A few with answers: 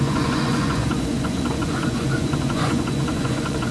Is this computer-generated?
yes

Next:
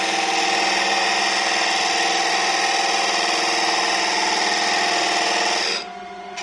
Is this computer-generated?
no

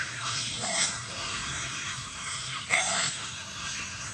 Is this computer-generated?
yes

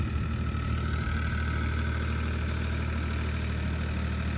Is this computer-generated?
no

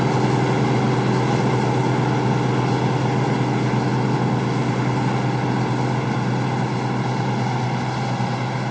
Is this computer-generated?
no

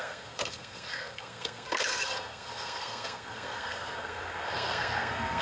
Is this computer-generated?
yes